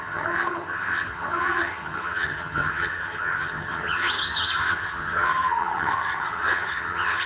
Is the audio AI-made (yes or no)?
yes